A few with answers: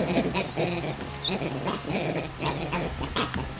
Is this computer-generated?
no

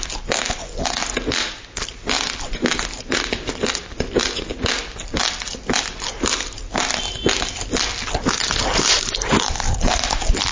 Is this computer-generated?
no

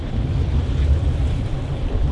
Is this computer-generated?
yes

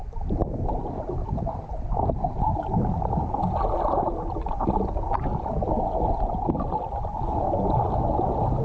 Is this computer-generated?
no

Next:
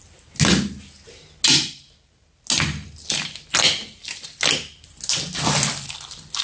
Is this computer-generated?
no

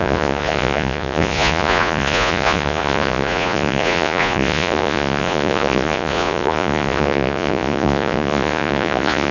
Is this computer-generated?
yes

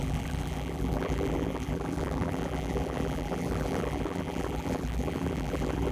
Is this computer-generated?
yes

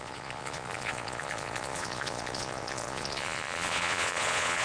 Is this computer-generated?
yes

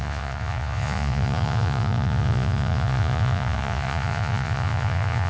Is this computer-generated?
yes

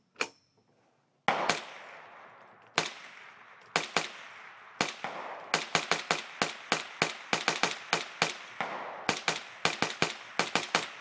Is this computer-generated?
no